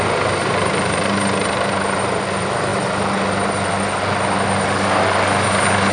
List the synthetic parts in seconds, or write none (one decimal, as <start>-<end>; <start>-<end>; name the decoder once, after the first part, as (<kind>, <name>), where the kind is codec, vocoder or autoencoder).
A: 0.4-2.2 (vocoder, BigVGAN v2)

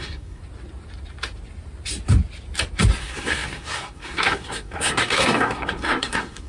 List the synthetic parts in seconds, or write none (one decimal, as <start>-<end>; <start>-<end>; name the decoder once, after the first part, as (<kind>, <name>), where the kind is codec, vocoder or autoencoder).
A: 0.0-0.4 (codec, SNAC); 3.0-6.5

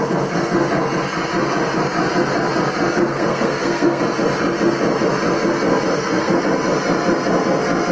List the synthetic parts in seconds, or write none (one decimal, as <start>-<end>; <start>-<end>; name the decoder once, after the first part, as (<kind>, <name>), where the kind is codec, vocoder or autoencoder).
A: 3.1-4.0 (codec, SNAC); 5.9-6.4

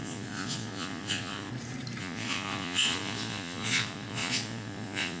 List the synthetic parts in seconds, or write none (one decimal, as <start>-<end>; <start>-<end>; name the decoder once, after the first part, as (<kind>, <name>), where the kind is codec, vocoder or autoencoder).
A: 0.0-1.5 (vocoder, Vocos); 2.0-5.2